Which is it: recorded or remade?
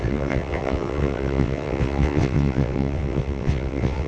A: remade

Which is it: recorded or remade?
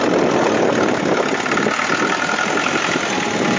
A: recorded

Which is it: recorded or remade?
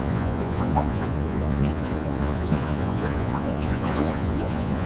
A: remade